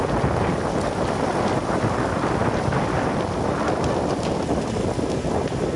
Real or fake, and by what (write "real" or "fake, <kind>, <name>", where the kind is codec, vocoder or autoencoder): real